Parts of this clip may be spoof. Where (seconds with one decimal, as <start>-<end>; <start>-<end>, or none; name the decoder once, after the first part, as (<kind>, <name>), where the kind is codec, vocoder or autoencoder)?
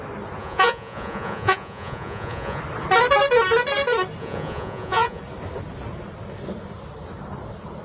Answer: 0.4-2.6 (vocoder, Vocos); 4.2-5.2